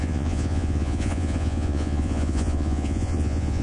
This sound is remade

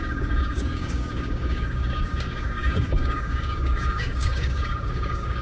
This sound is remade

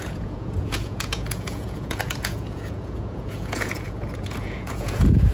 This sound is remade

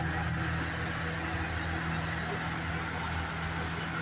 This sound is recorded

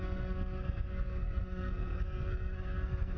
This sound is remade